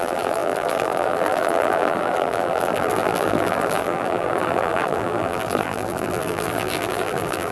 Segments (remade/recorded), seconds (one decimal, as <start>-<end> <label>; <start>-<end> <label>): 0.0-7.5 remade